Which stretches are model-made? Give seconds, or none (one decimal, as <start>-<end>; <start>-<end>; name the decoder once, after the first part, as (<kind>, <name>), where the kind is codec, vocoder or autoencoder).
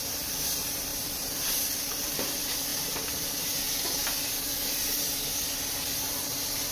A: 0.0-2.7 (vocoder, BigVGAN v2)